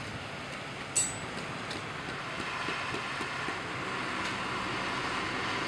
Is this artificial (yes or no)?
no